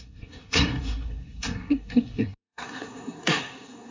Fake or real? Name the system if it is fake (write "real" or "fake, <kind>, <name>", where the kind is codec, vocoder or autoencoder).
fake, codec, SNAC